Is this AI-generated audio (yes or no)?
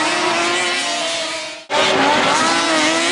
no